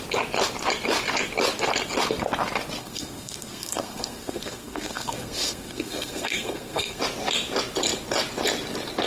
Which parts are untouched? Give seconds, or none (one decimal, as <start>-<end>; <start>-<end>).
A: 0.0-2.8; 7.0-9.1